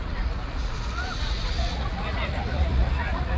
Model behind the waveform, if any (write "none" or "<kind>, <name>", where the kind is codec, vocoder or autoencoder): vocoder, Vocos